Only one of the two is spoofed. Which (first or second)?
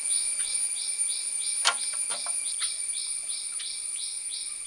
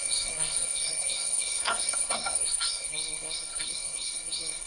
second